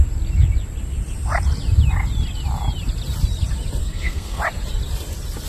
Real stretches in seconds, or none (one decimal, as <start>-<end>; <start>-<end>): 0.0-3.8; 4.4-5.5